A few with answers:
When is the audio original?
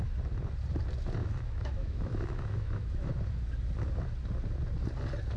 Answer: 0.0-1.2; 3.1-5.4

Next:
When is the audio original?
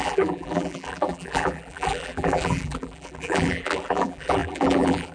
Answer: none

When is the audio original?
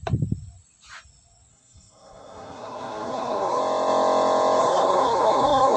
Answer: 0.0-1.5; 3.6-4.6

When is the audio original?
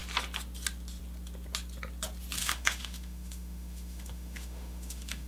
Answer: 0.0-2.4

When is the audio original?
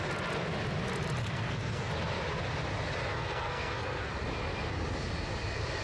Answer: 0.0-1.2; 1.9-3.1; 4.1-5.8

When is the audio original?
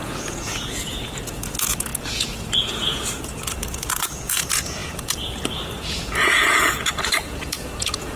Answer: none